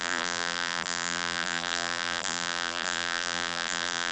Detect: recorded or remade remade